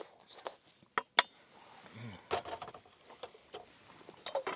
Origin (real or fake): real